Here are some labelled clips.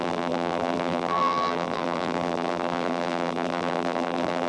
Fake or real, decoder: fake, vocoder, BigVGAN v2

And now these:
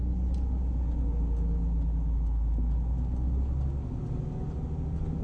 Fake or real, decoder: real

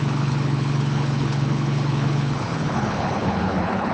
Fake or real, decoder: fake, codec, HILCodec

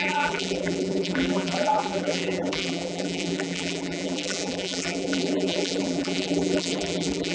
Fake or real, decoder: fake, vocoder, BigVGAN v2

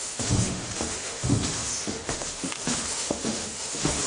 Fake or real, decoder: fake, autoencoder, DAC-VAE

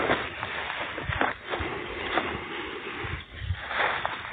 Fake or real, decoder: real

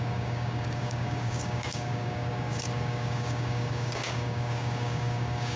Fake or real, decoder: fake, codec, DAC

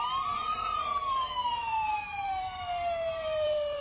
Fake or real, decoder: fake, vocoder, BigVGAN v2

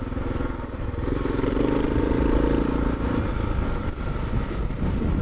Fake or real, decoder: real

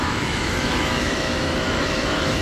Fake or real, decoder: fake, autoencoder, DAC-VAE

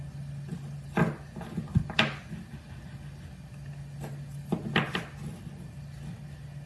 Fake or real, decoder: real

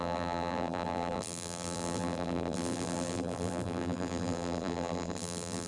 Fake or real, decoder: fake, vocoder, BigVGAN v2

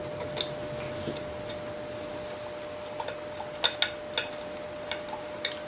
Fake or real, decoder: real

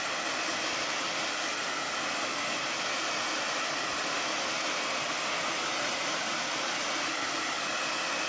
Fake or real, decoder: real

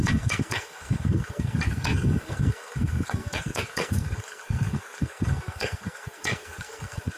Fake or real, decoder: fake, codec, SNAC